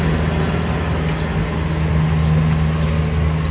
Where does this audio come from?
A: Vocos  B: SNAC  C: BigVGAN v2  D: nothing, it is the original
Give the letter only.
D